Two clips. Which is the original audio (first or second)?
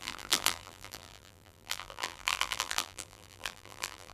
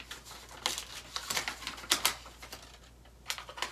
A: second